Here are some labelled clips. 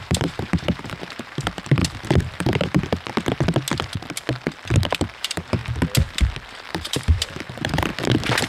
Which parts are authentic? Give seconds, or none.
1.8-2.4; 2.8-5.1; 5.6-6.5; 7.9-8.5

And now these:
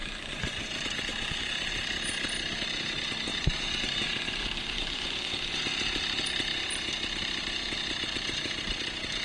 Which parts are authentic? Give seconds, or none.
0.7-1.1; 1.7-3.3; 5.6-9.2

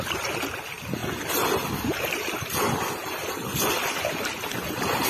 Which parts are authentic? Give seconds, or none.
0.0-5.1

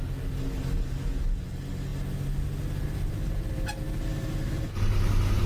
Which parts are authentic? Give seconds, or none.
0.0-5.5

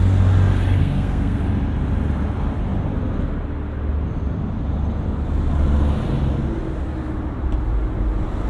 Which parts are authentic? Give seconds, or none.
0.0-0.8; 1.4-8.5